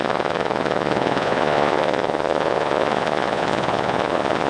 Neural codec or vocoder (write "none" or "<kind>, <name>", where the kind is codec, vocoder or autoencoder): vocoder, Vocos